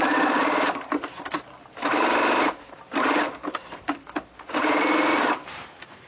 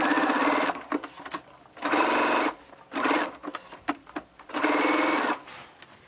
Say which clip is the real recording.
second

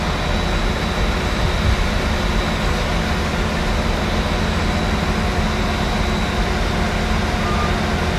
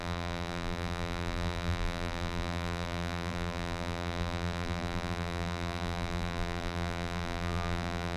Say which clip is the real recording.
first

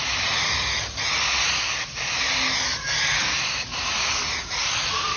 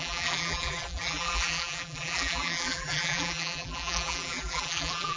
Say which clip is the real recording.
first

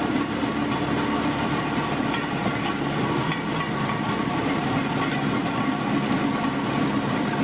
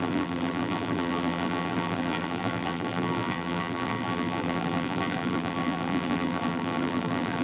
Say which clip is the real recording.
first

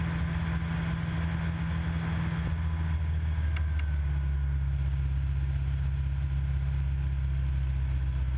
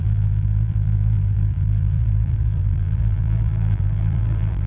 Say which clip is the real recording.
first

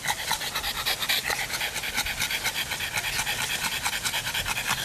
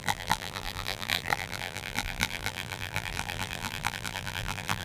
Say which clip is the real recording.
first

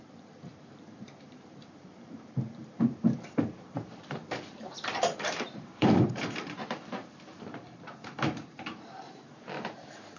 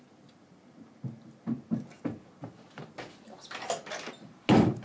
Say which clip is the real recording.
second